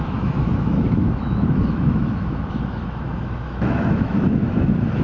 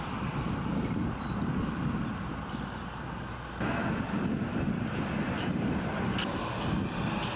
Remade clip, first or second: first